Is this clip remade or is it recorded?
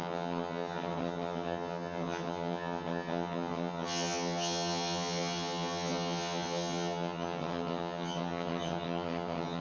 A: remade